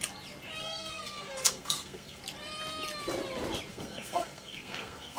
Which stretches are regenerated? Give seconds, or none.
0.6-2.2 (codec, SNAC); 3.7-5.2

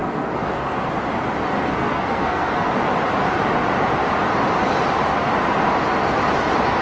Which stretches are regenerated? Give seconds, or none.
0.0-0.9 (codec, SNAC); 1.6-2.7